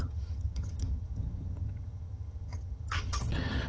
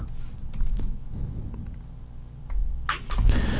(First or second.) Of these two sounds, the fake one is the first